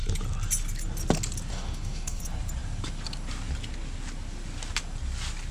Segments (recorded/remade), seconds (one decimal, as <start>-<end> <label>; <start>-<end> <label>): 0.0-1.5 recorded; 1.5-2.2 remade; 2.2-5.5 recorded